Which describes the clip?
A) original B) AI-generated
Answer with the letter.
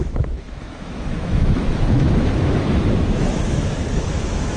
B